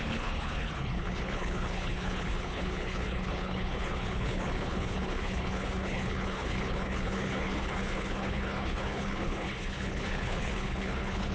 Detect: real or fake fake